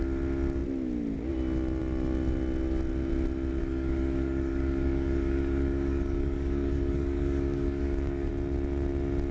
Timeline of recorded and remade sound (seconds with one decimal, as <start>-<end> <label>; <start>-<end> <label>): 0.0-3.6 recorded; 3.6-8.3 remade; 8.3-9.3 recorded